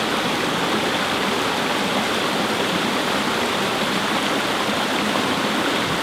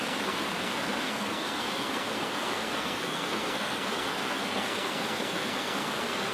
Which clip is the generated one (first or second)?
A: second